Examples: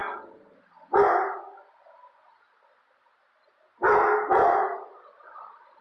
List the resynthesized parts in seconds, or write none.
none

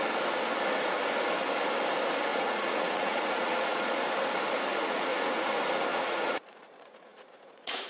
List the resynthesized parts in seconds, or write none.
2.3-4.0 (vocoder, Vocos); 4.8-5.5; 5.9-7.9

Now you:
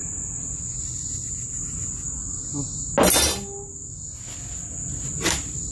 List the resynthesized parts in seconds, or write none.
none